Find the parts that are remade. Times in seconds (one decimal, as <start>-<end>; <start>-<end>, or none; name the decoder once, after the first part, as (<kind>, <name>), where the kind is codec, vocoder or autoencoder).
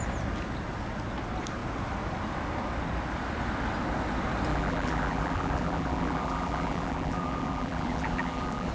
4.5-8.7 (vocoder, BigVGAN v2)